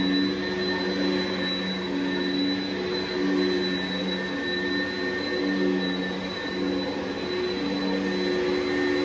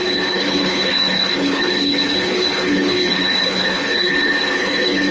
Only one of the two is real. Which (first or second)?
first